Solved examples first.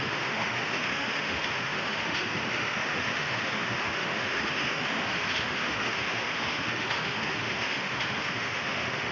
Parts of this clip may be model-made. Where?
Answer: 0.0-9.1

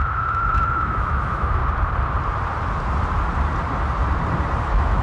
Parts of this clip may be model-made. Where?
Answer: 0.0-1.6; 4.6-5.0

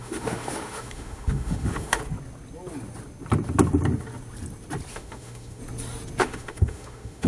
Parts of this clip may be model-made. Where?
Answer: 0.0-2.0; 4.9-5.6; 6.2-7.3

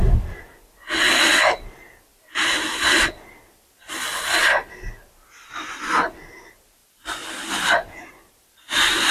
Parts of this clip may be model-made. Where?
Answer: none